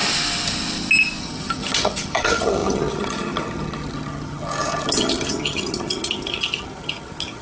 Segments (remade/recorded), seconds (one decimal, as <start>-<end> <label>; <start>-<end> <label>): 0.0-1.2 recorded; 1.2-7.4 remade